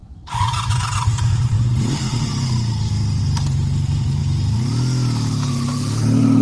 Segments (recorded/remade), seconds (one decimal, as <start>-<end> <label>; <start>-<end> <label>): 0.0-1.2 recorded; 1.2-2.3 remade; 2.3-3.2 recorded; 3.2-4.2 remade; 4.2-5.5 recorded; 5.5-6.4 remade